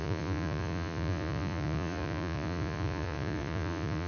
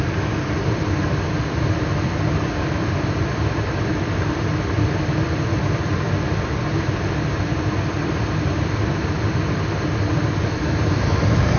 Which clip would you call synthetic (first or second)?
first